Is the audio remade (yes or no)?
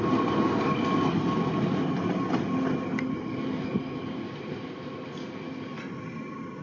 no